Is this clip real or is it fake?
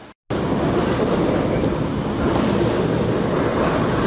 real